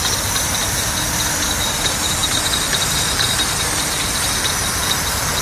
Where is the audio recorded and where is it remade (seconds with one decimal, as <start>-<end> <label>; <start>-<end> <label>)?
0.0-5.4 recorded